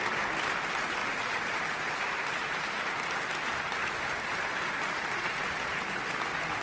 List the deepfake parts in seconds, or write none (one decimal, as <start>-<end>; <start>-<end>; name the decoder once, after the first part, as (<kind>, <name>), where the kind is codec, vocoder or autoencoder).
1.0-5.0 (vocoder, BigVGAN v2)